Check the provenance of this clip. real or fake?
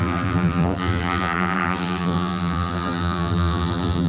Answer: fake